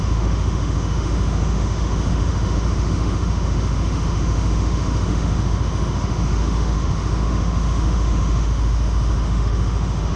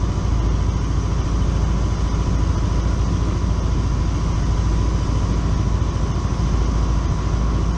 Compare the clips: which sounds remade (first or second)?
first